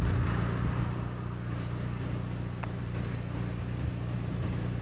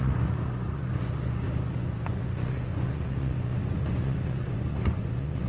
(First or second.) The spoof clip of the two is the second